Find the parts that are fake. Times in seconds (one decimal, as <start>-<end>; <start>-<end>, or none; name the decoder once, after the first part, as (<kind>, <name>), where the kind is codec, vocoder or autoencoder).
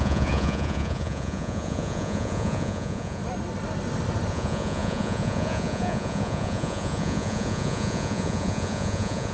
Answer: 0.0-3.2 (vocoder, Vocos); 4.3-9.3